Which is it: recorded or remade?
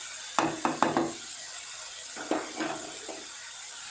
recorded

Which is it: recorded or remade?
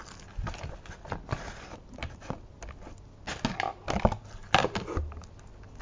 recorded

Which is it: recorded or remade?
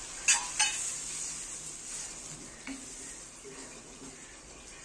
recorded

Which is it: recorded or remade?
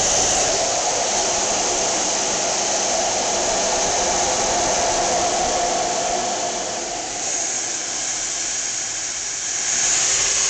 recorded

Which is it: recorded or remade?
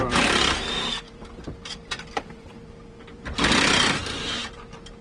remade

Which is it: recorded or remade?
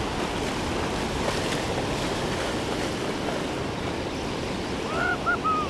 recorded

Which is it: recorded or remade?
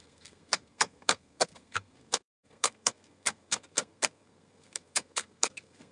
remade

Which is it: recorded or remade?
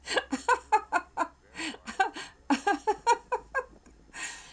remade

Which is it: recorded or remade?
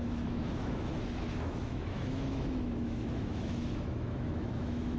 remade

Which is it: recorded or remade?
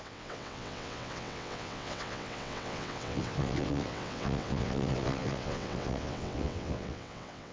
remade